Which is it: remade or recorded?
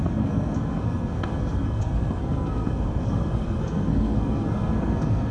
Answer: remade